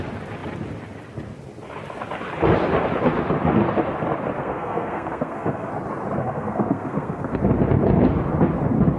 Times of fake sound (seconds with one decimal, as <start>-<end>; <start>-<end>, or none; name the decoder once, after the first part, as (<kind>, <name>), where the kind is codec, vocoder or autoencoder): 4.4-5.7 (codec, SNAC); 6.2-7.4